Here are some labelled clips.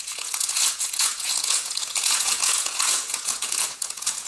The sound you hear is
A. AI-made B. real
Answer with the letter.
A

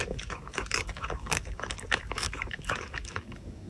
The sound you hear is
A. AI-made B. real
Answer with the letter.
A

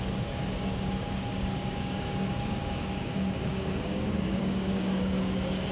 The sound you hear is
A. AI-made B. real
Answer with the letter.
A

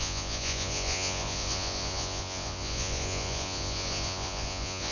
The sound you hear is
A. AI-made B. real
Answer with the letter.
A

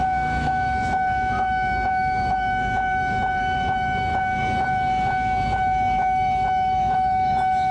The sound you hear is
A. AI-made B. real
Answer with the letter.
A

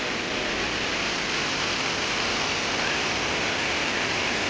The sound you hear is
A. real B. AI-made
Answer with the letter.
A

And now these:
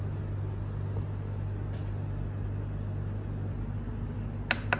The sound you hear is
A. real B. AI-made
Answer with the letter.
A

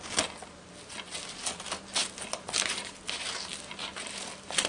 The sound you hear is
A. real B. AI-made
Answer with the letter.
A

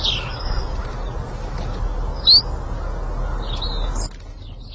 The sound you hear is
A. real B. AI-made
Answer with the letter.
A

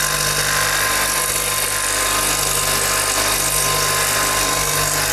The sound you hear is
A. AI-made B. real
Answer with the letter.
B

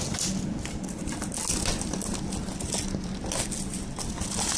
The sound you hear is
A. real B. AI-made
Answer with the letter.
A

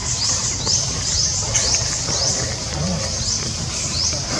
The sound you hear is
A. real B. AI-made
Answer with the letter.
A